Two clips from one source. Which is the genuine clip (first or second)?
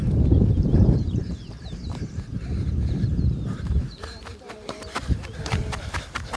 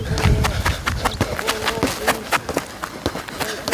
second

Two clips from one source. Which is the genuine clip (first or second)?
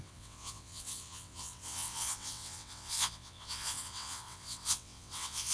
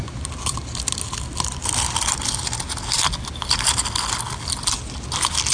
second